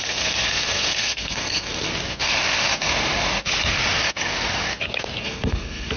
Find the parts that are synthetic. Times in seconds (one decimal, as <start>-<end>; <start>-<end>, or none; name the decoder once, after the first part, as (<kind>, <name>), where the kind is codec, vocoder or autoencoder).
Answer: 0.0-1.9 (codec, SNAC); 5.2-6.0